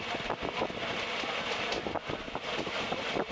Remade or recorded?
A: recorded